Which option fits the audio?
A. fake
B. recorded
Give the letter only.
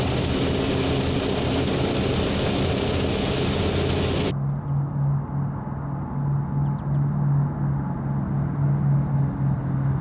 B